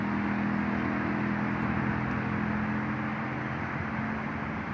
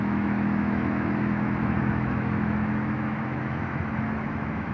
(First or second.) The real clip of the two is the first